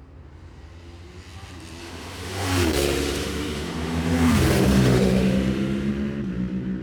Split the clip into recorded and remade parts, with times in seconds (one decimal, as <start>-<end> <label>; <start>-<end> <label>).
0.0-1.8 recorded; 1.8-5.9 remade; 5.9-6.8 recorded